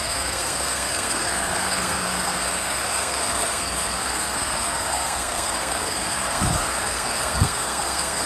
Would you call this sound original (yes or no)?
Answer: no